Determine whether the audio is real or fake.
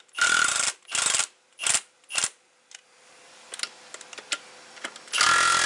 real